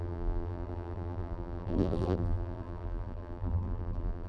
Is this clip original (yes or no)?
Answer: no